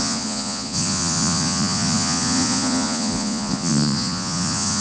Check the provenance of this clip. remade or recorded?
remade